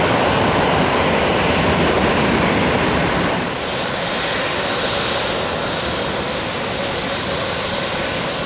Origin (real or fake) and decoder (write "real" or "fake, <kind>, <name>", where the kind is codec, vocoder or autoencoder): fake, vocoder, BigVGAN v2